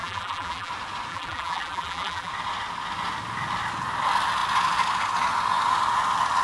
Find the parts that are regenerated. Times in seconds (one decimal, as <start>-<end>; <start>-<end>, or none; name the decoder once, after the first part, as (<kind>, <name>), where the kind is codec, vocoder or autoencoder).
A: 0.0-0.7 (vocoder, BigVGAN v2); 1.1-2.3